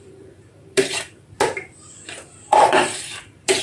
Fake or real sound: fake